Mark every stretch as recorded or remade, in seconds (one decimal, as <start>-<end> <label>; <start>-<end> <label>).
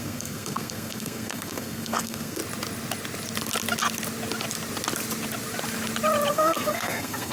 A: 0.0-2.4 remade; 2.4-6.3 recorded; 6.3-7.3 remade